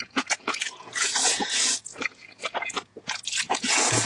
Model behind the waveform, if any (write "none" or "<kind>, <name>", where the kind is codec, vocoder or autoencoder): vocoder, Vocos